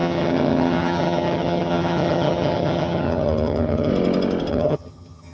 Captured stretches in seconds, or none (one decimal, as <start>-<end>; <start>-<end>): 3.9-4.5